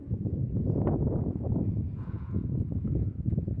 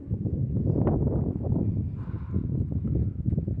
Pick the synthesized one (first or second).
first